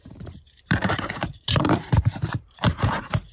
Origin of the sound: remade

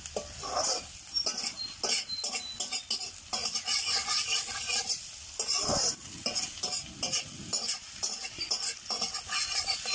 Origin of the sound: recorded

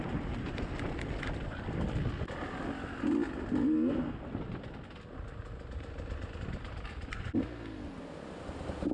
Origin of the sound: recorded